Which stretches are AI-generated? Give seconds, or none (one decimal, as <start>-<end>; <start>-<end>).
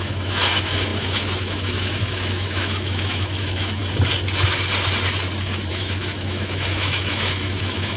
0.0-3.8; 5.7-8.0